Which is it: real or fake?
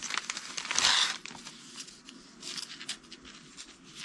real